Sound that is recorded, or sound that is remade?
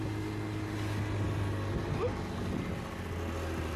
recorded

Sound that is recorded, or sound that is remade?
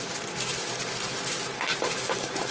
recorded